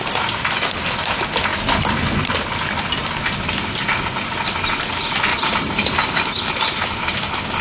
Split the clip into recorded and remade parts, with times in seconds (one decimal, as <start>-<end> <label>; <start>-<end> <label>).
0.0-7.6 recorded